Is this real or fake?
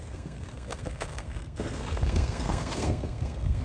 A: fake